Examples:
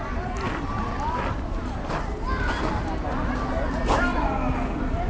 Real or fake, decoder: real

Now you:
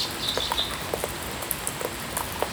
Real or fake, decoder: real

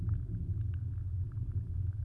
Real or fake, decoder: real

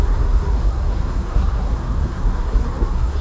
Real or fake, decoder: fake, codec, SNAC